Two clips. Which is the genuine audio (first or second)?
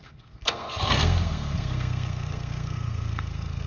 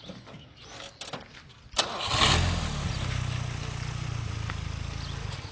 second